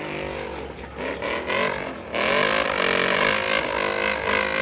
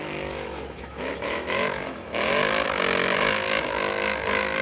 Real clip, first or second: first